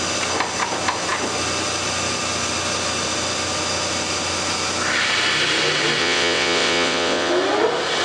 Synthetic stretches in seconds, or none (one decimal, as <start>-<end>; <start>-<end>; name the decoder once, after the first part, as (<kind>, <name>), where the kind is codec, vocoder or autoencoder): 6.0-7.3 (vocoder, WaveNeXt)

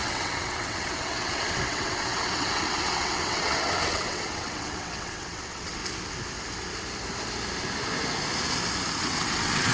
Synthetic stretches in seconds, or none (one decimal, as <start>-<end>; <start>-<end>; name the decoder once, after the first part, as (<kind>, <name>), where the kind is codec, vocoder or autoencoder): 0.0-5.8 (vocoder, WaveNeXt); 9.0-9.7

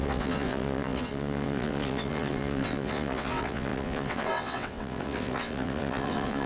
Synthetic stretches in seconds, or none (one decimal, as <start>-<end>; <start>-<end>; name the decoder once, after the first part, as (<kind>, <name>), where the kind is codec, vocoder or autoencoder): 0.0-6.5 (vocoder, WaveNeXt)

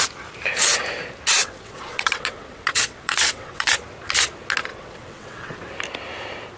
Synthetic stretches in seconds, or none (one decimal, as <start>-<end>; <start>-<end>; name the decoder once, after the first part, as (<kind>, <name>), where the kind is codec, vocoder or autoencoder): 1.4-3.7 (vocoder, WaveNeXt); 4.7-5.6

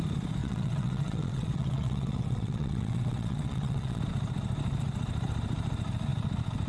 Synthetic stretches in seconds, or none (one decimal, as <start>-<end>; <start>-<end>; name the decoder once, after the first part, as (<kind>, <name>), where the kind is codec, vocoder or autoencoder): 0.4-4.0 (vocoder, WaveNeXt)

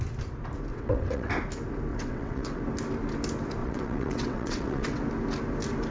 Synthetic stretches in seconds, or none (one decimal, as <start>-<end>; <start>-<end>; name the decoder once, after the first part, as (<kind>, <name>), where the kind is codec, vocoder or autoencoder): 0.7-1.3 (vocoder, WaveNeXt); 1.9-2.6; 3.6-5.0